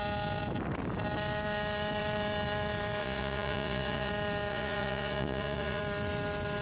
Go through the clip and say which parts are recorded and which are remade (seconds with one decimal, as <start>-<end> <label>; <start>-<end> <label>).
0.0-3.0 recorded; 3.0-4.1 remade; 4.1-4.5 recorded; 4.5-5.8 remade; 5.8-6.6 recorded